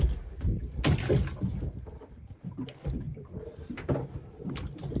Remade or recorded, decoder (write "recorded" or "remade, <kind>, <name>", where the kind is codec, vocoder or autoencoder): recorded